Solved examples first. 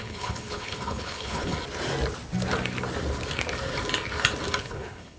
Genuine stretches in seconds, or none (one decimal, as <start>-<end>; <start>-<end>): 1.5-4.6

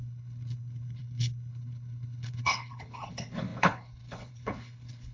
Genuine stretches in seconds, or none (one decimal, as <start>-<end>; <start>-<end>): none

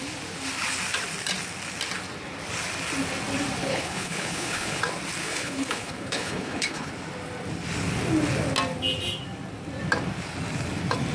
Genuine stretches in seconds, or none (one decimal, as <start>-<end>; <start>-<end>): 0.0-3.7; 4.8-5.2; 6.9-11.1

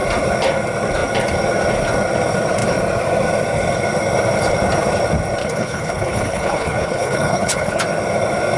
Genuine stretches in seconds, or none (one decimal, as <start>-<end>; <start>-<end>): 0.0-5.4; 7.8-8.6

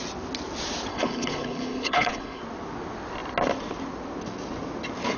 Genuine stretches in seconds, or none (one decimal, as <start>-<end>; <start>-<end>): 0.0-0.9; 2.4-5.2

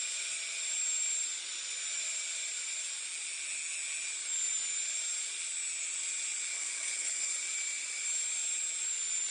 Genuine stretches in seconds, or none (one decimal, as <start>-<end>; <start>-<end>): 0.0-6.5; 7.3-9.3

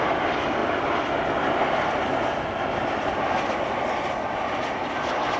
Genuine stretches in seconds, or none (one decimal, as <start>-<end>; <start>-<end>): 0.0-5.4